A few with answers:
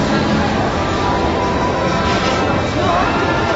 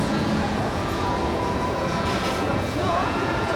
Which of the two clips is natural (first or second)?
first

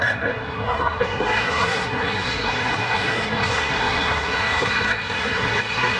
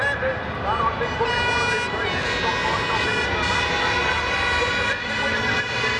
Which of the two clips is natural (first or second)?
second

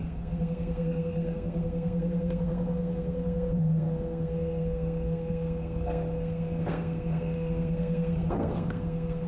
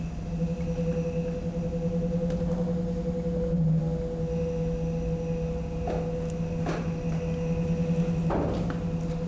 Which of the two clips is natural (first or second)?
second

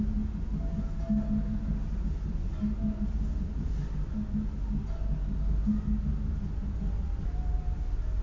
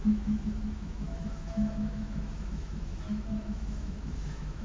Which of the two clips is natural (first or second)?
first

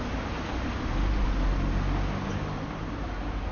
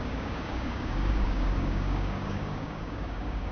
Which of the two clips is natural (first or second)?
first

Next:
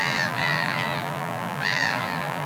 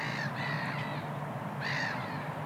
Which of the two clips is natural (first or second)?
second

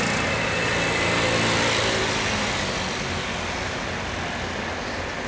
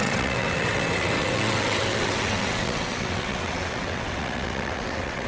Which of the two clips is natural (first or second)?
first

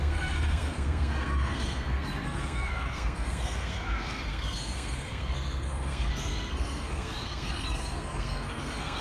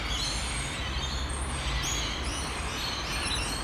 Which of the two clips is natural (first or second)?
second